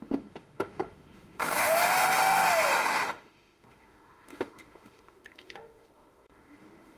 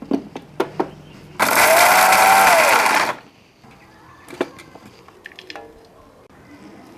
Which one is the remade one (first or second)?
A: first